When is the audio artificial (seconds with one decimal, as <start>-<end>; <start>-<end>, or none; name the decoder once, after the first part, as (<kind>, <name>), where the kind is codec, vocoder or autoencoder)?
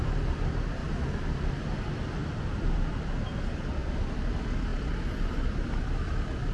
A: 0.8-1.5 (vocoder, BigVGAN v2); 2.2-3.0